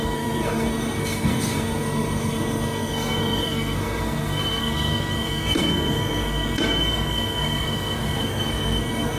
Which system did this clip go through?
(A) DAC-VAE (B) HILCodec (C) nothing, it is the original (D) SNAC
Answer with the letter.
D